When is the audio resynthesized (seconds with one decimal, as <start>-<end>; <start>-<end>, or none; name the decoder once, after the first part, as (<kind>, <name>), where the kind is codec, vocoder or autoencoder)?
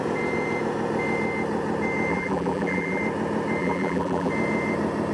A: 2.1-3.0 (vocoder, BigVGAN v2); 3.6-4.3